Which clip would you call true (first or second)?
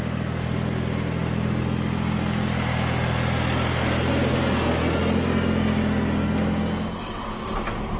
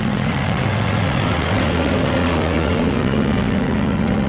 first